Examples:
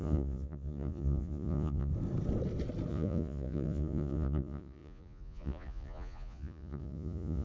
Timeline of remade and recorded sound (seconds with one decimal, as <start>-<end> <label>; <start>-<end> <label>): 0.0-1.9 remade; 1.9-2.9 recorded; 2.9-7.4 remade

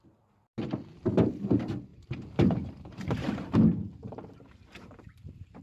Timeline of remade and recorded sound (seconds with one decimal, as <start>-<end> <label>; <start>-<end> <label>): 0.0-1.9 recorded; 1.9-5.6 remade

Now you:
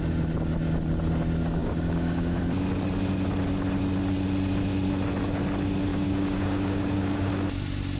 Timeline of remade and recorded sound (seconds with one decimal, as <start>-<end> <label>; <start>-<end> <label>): 0.0-1.6 recorded; 1.6-2.4 remade; 2.4-5.9 recorded; 5.9-7.3 remade; 7.3-8.0 recorded

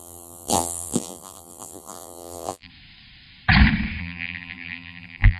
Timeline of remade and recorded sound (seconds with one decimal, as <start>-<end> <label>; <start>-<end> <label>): 0.0-2.7 remade; 2.7-4.0 recorded; 4.0-5.4 remade

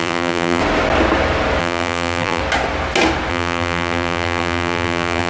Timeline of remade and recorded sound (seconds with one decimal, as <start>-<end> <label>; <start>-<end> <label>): 0.0-0.6 remade; 0.6-1.6 recorded; 1.6-2.4 remade; 2.4-3.3 recorded; 3.3-5.3 remade

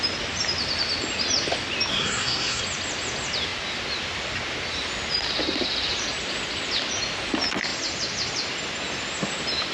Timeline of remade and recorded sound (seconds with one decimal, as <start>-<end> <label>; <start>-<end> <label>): 0.0-1.9 recorded; 1.9-2.6 remade; 2.6-9.7 recorded

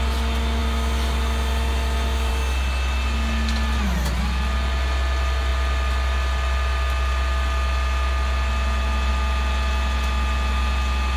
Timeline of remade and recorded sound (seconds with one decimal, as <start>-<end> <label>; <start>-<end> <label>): 0.0-11.2 recorded